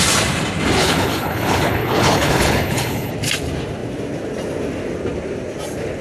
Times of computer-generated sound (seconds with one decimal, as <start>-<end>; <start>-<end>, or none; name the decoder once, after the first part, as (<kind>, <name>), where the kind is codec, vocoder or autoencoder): 0.8-3.1 (codec, HILCodec)